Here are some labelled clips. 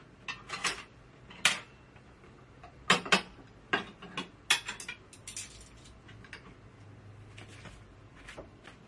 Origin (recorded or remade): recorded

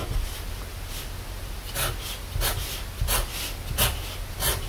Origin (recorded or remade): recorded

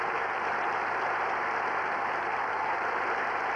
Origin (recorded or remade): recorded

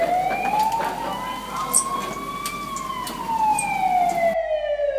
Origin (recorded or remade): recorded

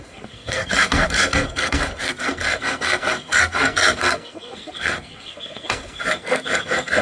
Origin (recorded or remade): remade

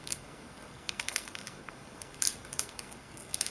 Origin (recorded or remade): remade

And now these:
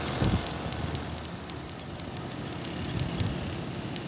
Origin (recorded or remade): recorded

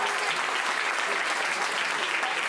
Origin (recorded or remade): recorded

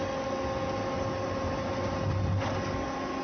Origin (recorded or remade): recorded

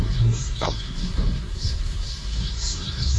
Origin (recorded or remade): remade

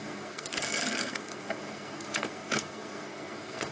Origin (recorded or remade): remade